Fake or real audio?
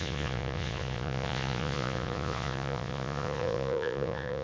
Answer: fake